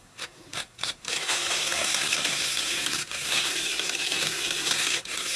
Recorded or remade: remade